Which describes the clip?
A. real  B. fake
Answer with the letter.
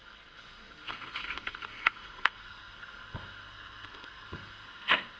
B